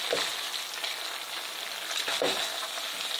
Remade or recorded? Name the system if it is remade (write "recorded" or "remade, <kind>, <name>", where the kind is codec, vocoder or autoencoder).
recorded